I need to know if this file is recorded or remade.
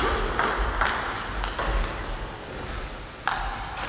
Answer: recorded